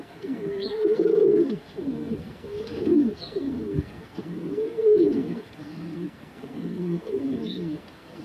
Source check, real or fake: fake